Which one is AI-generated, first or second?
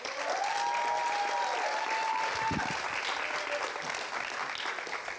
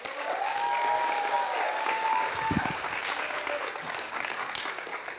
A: second